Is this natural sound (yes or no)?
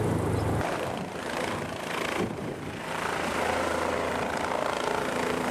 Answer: no